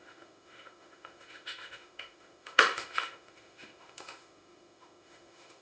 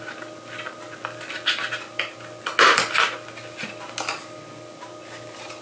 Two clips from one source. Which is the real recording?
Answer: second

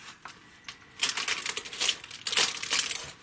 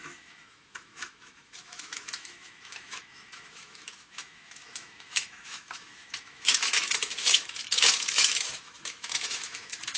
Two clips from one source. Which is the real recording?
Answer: first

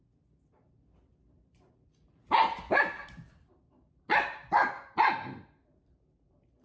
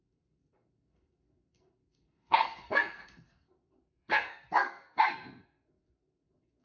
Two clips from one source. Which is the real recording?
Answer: first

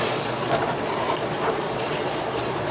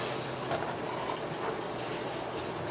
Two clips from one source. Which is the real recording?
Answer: second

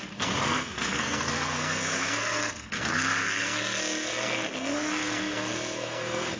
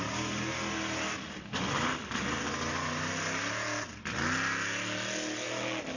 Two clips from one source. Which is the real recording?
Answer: second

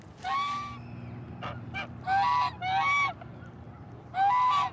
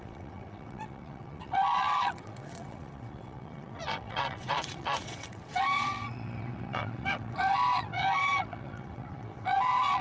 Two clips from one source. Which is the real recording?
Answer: first